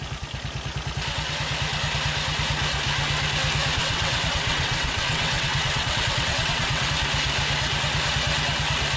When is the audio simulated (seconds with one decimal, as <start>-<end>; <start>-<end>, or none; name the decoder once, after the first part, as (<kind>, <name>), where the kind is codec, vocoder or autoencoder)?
3.8-6.9 (vocoder, WaveNeXt)